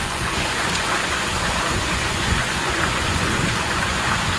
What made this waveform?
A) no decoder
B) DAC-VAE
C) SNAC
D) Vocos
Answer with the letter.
D